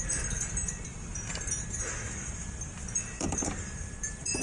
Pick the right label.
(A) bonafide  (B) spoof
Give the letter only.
B